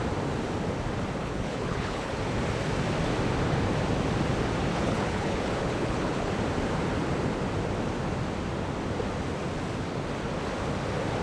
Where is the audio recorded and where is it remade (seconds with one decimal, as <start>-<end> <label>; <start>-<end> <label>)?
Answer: 0.0-1.2 recorded; 1.2-2.1 remade; 2.1-4.7 recorded; 4.7-6.3 remade; 6.3-11.2 recorded